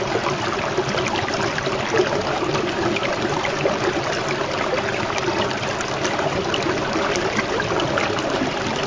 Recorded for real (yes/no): yes